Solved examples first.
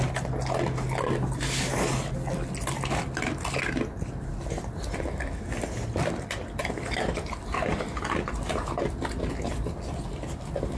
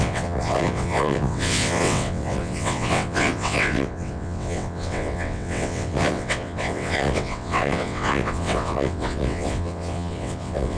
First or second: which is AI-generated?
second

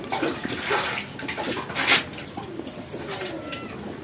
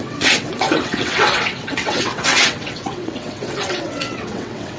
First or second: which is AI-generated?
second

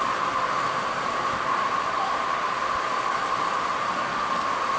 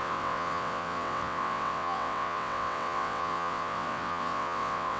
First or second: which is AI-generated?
second